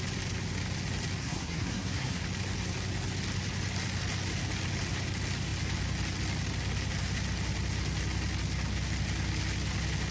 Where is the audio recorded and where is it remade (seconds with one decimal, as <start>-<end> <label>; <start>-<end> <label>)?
0.0-1.2 recorded; 1.2-2.2 remade; 2.2-10.1 recorded